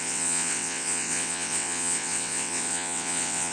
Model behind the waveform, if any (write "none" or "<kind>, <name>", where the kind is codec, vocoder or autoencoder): vocoder, WaveNeXt